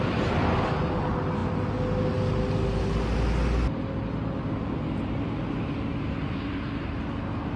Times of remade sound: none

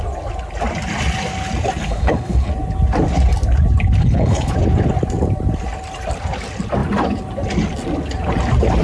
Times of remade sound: 1.8-2.5 (codec, HILCodec); 4.0-4.5

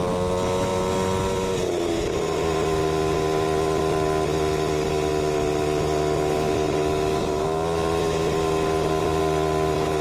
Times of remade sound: none

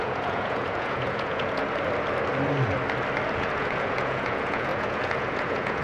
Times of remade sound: 0.0-1.6 (vocoder, Vocos); 3.3-5.8

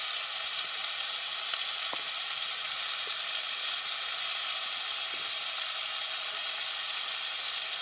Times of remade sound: none

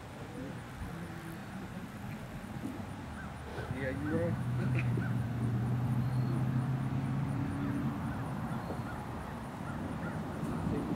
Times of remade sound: 3.5-4.9 (autoencoder, DAC-VAE)

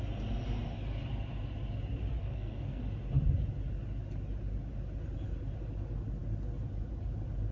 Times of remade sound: 2.2-2.8 (codec, SNAC)